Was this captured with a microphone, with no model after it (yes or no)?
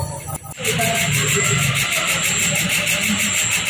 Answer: yes